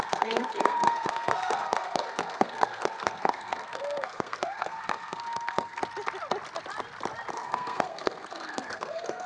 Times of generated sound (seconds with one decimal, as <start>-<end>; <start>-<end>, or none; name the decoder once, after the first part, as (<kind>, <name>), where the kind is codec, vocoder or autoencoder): 0.0-5.8 (codec, SNAC); 7.3-9.3